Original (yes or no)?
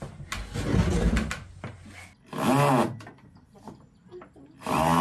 yes